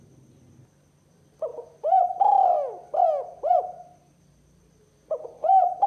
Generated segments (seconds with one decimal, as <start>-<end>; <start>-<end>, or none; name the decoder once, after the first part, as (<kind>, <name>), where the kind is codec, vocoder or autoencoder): none